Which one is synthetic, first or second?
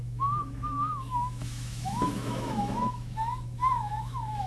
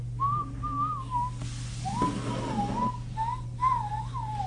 first